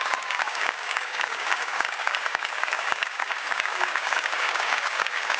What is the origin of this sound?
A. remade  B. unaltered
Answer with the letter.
A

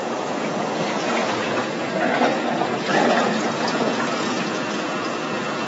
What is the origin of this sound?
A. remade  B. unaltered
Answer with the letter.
A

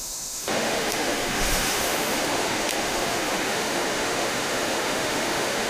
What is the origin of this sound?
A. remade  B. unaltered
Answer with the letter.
A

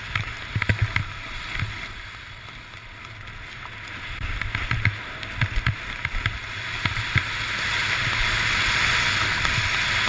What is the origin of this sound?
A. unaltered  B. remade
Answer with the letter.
A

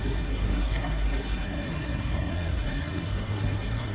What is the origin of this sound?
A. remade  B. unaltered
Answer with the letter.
A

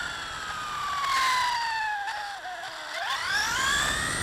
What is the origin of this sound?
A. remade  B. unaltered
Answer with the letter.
B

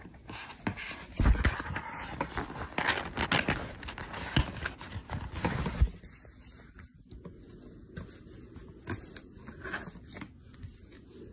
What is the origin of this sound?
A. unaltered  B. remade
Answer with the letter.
A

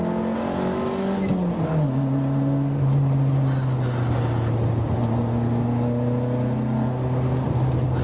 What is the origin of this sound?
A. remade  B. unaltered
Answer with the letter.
B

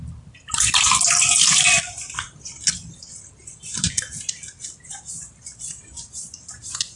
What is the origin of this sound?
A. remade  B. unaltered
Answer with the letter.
A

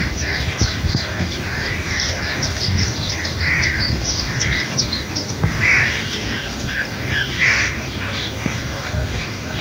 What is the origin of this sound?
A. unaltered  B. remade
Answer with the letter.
B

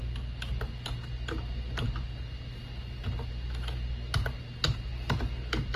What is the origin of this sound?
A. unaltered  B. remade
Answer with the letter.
A